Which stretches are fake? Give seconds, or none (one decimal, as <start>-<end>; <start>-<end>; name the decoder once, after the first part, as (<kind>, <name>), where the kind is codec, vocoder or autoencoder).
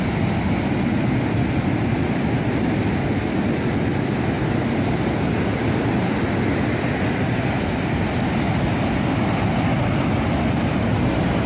none